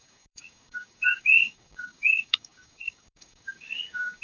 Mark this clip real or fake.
fake